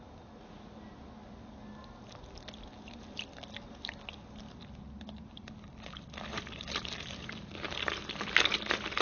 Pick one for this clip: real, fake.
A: real